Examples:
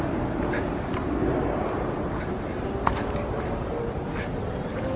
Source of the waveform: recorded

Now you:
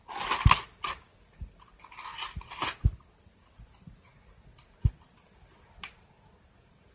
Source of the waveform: recorded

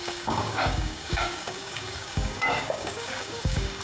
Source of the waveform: remade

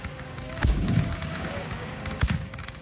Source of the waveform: remade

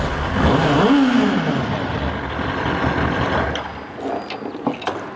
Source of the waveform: recorded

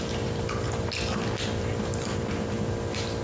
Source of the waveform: recorded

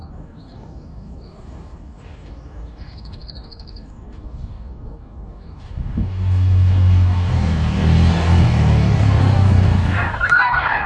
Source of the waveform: remade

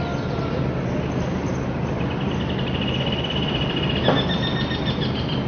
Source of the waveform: recorded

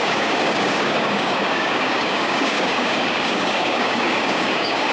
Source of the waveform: remade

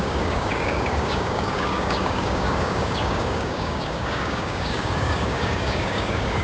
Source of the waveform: remade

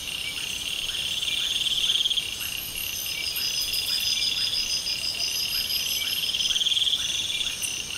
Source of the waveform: recorded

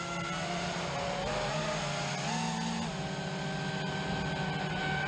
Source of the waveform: recorded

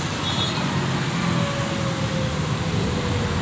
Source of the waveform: recorded